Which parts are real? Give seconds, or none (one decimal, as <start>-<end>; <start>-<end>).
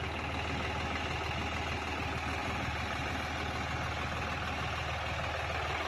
0.0-2.4; 3.1-5.9